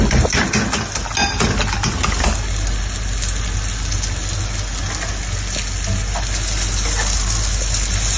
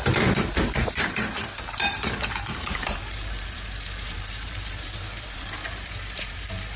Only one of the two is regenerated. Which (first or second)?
second